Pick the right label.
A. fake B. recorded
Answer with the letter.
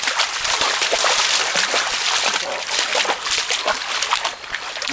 B